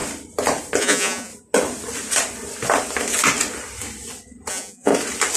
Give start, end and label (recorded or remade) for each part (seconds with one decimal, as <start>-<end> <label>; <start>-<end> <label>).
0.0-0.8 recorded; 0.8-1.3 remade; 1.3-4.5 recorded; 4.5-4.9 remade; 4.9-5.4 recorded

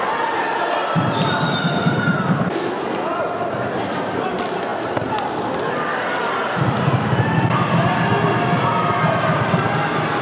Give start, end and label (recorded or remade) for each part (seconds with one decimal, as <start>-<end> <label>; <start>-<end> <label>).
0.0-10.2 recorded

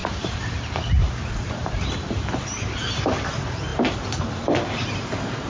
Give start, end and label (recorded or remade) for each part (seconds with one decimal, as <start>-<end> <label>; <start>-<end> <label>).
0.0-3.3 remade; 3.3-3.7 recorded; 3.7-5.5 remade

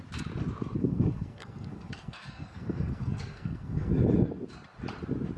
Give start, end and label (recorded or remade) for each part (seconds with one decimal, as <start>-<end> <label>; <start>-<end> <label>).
0.0-0.8 recorded; 0.8-4.0 remade; 4.0-5.4 recorded

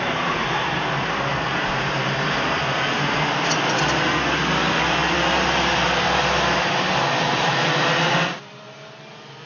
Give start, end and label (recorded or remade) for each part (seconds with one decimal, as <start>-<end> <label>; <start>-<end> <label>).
0.0-9.5 recorded

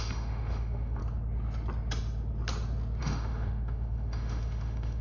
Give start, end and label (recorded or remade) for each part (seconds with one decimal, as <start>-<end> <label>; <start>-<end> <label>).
0.0-1.0 remade; 1.0-3.0 recorded; 3.0-5.0 remade

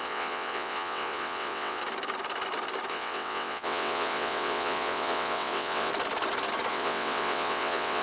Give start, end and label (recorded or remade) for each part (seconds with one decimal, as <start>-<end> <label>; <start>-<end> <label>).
0.0-1.8 remade; 1.8-2.9 recorded; 2.9-5.9 remade; 5.9-6.7 recorded; 6.7-8.0 remade

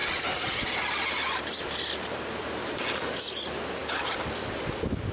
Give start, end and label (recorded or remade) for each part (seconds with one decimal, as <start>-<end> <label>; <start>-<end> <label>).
0.0-5.1 recorded